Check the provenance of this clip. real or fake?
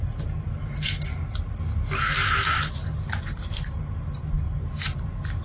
real